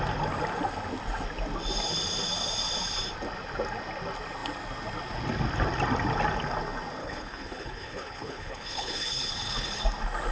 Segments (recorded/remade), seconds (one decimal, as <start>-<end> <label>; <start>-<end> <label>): 0.0-7.0 recorded; 7.0-9.8 remade; 9.8-10.3 recorded